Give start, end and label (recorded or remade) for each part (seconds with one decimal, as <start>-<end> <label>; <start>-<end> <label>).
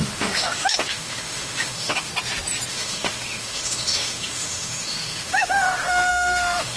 0.0-2.1 remade; 2.1-2.7 recorded; 2.7-6.8 remade